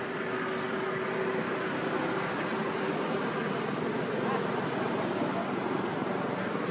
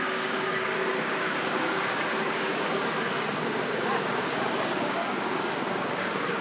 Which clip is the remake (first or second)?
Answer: second